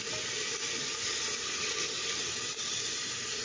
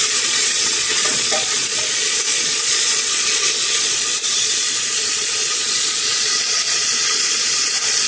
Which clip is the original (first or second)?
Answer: first